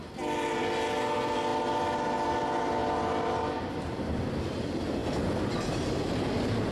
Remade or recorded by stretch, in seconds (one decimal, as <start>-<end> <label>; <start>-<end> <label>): 0.0-6.7 recorded